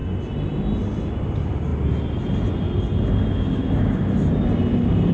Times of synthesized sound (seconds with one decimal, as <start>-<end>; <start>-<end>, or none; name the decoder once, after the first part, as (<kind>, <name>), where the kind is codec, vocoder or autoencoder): none